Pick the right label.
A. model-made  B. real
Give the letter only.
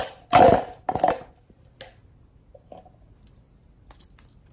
B